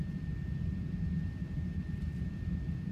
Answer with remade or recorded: recorded